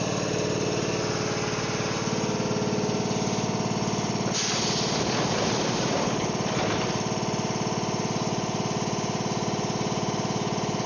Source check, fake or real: real